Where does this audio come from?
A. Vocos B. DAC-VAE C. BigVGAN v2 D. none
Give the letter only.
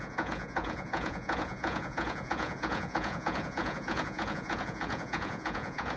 A